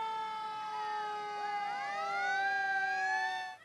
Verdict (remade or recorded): recorded